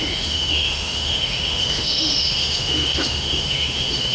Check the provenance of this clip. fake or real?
fake